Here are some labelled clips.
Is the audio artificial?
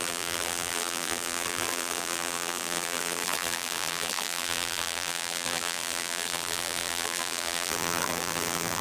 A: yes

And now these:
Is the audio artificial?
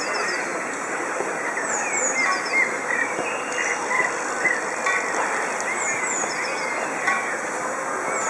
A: no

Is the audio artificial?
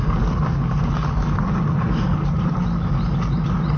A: no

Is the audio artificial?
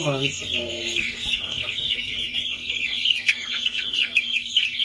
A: yes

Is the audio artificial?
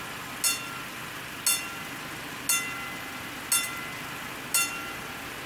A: no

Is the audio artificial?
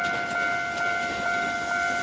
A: no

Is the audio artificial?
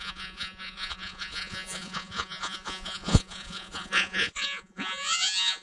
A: yes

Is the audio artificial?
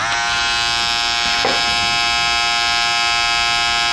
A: no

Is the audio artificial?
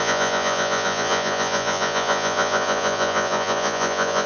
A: yes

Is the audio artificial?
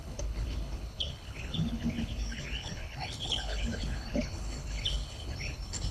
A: yes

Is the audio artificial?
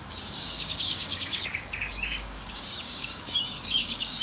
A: yes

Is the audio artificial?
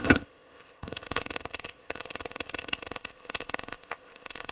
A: yes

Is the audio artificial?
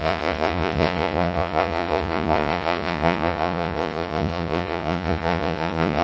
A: yes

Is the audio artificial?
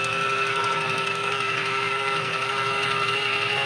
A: yes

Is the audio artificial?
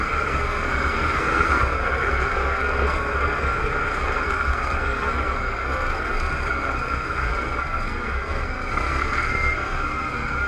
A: yes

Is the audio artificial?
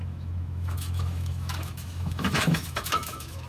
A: yes